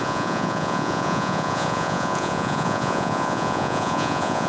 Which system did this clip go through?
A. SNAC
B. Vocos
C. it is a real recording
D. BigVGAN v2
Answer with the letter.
B